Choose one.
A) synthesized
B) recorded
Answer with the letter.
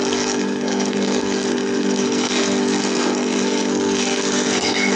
A